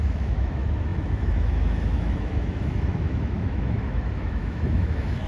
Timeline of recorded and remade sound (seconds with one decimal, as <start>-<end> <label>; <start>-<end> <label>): 0.0-5.3 remade